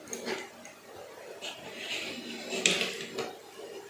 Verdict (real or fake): real